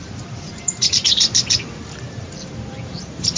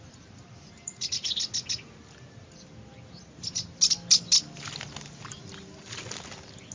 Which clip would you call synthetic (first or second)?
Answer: first